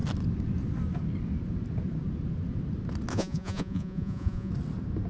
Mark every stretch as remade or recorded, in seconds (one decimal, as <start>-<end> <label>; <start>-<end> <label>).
0.0-3.1 recorded; 3.1-4.5 remade; 4.5-5.1 recorded

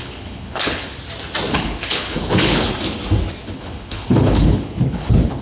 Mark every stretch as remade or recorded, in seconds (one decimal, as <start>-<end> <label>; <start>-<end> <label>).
0.0-0.9 remade; 0.9-1.5 recorded; 1.5-2.7 remade; 2.7-3.4 recorded; 3.4-5.4 remade